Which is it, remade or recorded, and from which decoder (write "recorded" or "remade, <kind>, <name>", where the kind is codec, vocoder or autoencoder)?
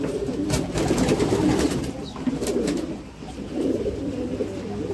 recorded